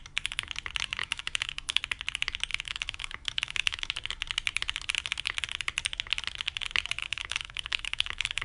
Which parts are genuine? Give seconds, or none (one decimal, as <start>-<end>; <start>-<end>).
0.0-1.0; 1.8-2.5; 3.9-7.0